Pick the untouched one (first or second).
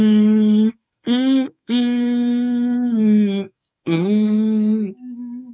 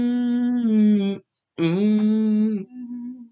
second